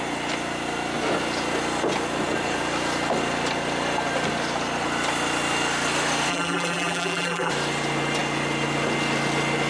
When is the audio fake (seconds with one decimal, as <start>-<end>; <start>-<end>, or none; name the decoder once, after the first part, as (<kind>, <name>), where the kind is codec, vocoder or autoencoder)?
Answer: 6.3-7.5 (vocoder, BigVGAN v2)